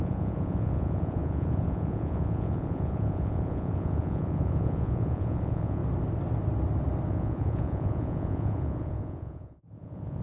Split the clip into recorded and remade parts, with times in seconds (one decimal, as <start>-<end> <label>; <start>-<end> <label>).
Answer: 0.0-5.8 remade; 5.8-7.1 recorded; 7.1-10.2 remade